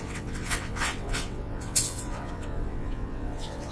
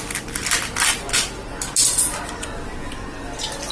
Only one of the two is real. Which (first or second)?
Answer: second